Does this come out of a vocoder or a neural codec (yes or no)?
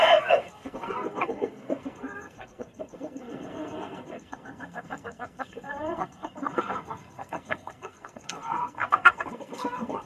yes